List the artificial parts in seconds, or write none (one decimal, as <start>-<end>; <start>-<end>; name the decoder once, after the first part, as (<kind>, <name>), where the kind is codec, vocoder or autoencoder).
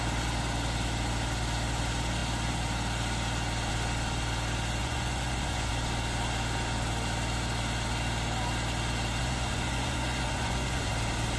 4.8-5.7 (vocoder, Vocos); 9.2-10.9